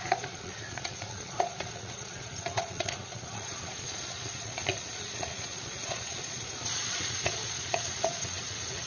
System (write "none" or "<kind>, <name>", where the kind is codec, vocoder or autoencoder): vocoder, Vocos